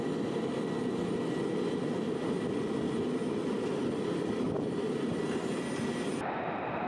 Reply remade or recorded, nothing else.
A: recorded